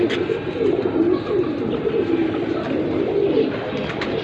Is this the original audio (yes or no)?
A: yes